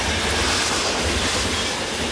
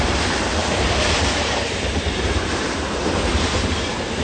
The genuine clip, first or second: first